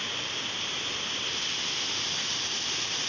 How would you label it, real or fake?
real